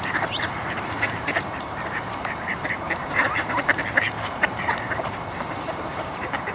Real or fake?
fake